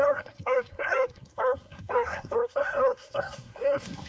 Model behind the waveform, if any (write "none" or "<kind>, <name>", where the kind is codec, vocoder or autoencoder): codec, SNAC